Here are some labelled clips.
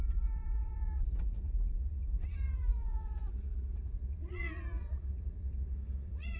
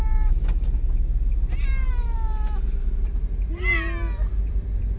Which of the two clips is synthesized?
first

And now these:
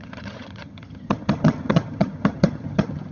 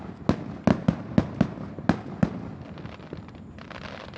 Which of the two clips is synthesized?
first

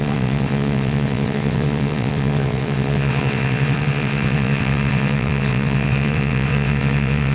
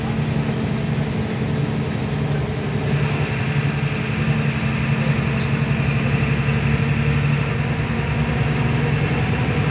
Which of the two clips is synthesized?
first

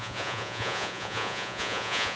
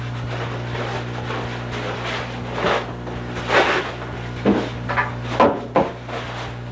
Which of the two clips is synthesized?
first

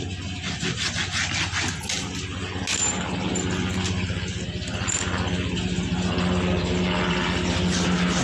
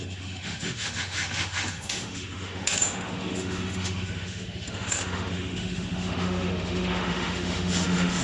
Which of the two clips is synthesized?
second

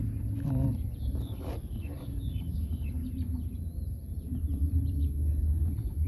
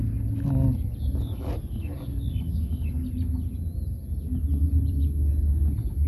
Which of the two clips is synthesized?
first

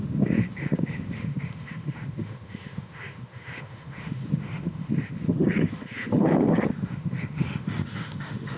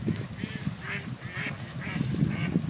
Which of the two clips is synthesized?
first